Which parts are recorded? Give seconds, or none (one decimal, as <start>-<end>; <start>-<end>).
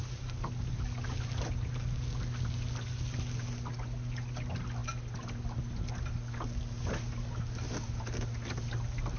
0.0-9.2